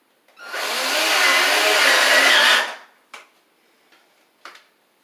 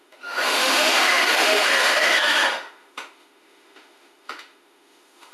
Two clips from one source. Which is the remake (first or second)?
second